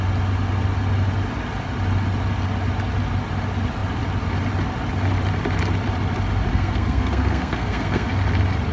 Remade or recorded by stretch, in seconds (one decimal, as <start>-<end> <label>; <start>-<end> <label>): 0.0-6.5 recorded; 6.5-8.1 remade; 8.1-8.7 recorded